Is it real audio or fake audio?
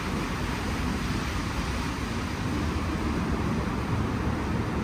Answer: real